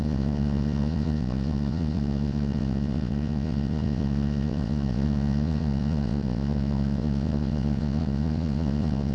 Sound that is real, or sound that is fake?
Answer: fake